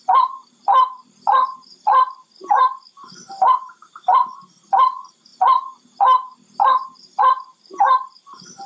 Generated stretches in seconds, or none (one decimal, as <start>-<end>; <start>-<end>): 0.0-5.3; 7.2-8.7